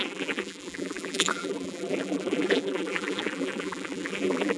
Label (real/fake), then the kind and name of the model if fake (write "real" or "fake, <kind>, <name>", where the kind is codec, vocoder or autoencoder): fake, vocoder, BigVGAN v2